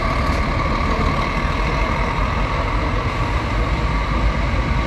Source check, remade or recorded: recorded